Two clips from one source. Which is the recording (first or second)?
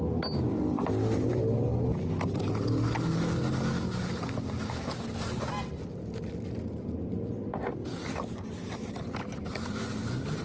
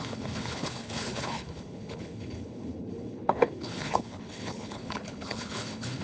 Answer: first